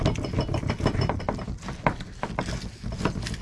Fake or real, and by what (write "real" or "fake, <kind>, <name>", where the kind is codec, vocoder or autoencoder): real